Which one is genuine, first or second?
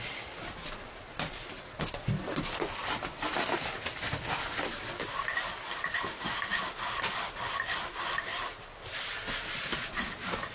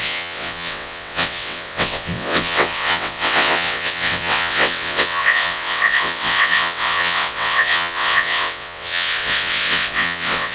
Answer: first